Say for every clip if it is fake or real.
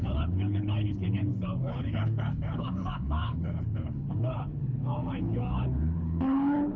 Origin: fake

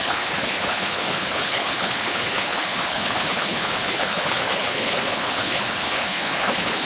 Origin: fake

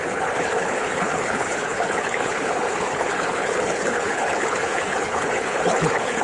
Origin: fake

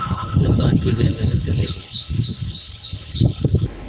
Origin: fake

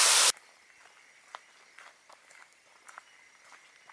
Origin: real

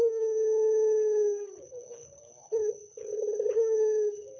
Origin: fake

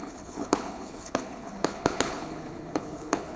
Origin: fake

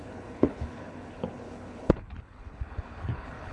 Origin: fake